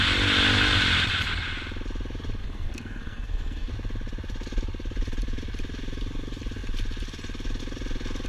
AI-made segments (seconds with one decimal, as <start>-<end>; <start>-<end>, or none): 2.4-3.7

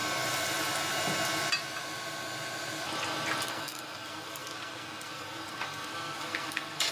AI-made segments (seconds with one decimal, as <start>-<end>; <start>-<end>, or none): 3.5-6.9